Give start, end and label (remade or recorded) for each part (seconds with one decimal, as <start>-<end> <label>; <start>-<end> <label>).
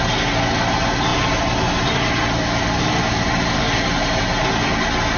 0.0-5.2 recorded